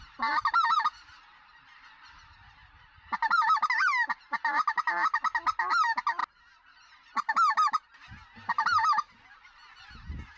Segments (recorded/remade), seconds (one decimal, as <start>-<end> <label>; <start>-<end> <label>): 0.0-10.4 recorded